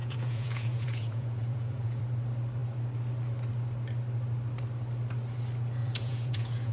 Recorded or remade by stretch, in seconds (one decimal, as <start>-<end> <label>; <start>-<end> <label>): 0.0-2.0 remade; 2.0-5.8 recorded; 5.8-6.7 remade